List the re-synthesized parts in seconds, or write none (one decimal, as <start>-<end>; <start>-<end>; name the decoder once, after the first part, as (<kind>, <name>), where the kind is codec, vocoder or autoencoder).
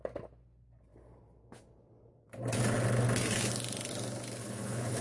4.4-5.0 (codec, HILCodec)